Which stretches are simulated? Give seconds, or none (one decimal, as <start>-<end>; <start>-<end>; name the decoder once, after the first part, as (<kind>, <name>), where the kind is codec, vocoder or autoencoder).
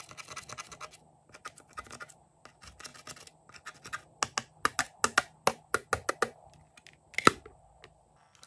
none